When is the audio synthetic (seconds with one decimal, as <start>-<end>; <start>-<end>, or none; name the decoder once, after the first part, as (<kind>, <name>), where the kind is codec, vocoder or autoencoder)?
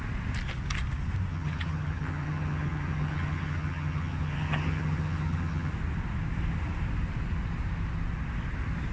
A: 1.3-5.7 (vocoder, HiFi-GAN)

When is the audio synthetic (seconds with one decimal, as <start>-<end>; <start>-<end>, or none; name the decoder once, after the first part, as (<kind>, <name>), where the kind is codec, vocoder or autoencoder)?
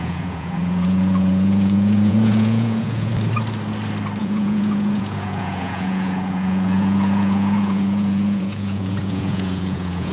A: 0.0-3.1 (vocoder, Vocos); 4.2-10.1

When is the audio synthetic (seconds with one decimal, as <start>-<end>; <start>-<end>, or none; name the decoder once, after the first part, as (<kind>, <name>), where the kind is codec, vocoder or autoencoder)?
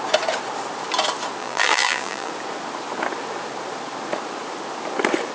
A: 1.4-2.3 (vocoder, BigVGAN v2)